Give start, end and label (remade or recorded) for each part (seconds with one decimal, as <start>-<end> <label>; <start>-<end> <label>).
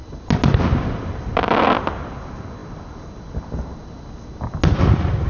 0.0-5.3 recorded